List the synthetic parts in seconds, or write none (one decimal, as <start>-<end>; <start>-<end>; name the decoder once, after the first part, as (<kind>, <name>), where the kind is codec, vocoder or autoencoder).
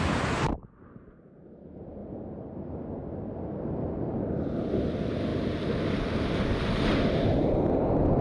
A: none